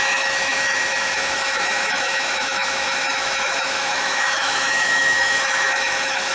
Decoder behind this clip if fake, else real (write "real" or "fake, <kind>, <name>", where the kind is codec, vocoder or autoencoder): fake, autoencoder, DAC-VAE